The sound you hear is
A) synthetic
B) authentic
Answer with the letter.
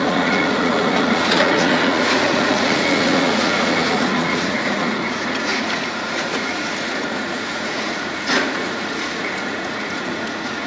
A